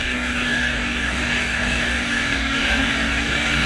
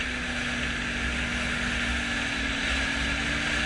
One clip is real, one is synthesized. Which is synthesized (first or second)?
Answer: first